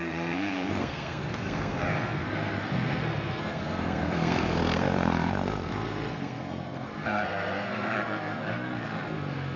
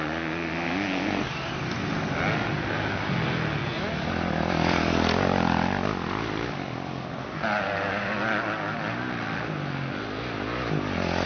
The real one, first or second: second